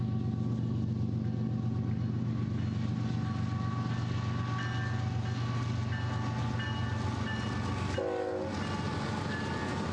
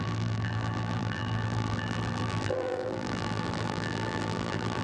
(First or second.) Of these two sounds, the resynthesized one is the second